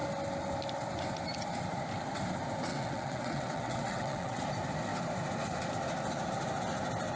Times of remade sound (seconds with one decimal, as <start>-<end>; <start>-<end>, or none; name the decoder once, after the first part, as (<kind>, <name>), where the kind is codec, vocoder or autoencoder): 2.7-4.4 (vocoder, WaveNeXt)